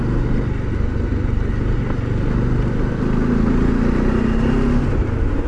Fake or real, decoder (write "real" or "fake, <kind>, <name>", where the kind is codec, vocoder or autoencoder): real